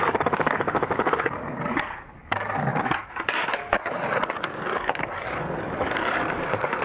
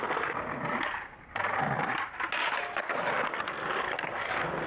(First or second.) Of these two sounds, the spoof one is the first